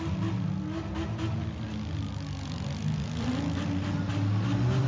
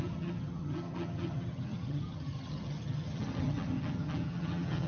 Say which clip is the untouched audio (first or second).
first